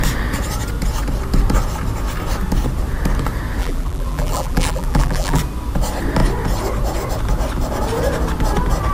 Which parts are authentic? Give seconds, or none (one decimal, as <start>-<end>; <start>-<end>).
0.0-3.6; 5.4-8.9